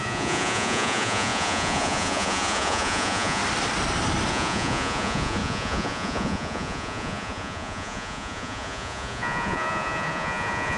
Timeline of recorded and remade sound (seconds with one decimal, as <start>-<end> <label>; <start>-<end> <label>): 0.0-3.4 remade; 3.4-4.3 recorded; 4.3-10.8 remade